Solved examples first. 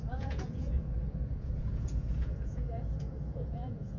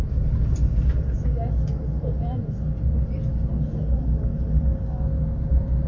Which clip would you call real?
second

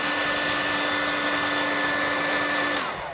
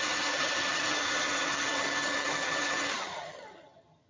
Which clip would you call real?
first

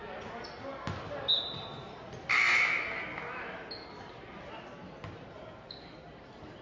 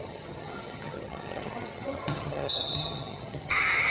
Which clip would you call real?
first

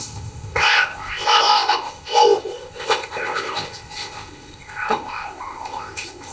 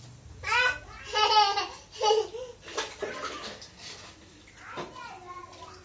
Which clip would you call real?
second